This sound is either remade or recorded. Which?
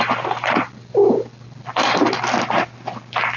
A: recorded